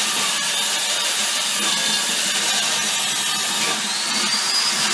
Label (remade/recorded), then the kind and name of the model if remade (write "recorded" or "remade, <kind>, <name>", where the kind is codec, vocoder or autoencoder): recorded